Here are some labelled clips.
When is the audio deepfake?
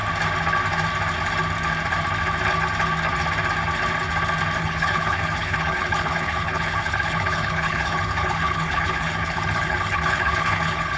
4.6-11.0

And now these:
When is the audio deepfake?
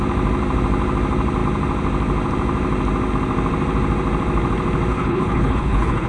4.9-6.1